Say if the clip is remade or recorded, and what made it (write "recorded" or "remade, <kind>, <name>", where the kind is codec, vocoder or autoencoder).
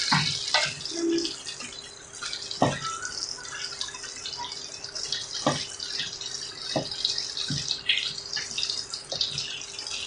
recorded